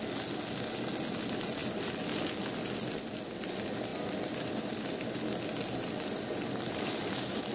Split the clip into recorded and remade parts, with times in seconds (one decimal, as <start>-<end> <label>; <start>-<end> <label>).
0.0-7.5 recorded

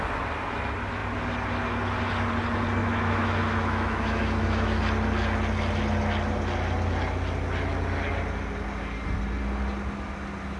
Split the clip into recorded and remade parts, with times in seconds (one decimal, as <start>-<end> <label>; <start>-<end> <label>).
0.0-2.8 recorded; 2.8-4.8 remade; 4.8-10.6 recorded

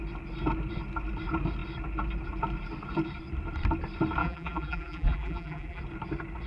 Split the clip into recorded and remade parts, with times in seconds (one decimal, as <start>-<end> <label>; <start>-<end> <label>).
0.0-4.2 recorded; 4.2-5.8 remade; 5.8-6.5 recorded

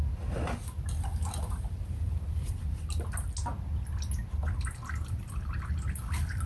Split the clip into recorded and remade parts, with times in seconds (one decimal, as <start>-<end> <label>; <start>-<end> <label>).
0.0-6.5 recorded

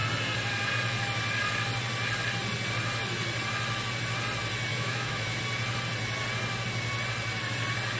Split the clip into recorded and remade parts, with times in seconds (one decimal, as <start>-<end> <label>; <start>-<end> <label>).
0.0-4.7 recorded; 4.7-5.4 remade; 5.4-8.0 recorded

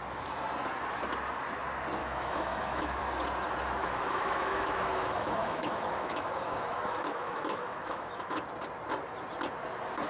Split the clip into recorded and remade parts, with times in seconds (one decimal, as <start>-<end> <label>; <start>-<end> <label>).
0.0-2.0 recorded; 2.0-3.0 remade; 3.0-3.8 recorded; 3.8-8.4 remade; 8.4-10.1 recorded

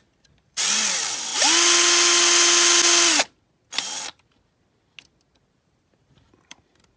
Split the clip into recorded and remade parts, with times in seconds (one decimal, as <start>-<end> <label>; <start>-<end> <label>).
0.0-1.3 remade; 1.3-5.5 recorded; 5.5-7.0 remade

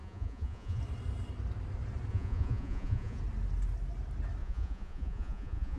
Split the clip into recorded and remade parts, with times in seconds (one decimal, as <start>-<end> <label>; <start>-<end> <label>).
0.0-0.8 remade; 0.8-2.1 recorded; 2.1-3.2 remade; 3.2-4.4 recorded; 4.4-5.8 remade